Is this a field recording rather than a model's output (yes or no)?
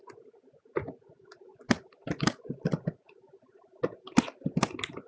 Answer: yes